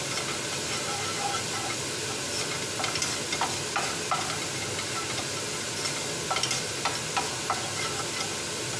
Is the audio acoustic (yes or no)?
yes